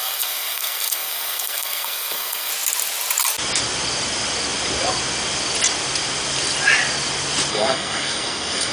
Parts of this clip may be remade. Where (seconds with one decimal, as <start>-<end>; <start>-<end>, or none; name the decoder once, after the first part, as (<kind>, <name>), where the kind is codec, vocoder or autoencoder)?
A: 0.0-2.5 (codec, SNAC); 7.5-8.7